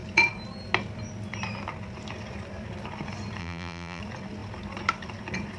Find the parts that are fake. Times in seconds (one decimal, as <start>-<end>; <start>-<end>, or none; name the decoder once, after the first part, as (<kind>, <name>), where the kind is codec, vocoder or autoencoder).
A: 3.4-4.0 (vocoder, BigVGAN v2)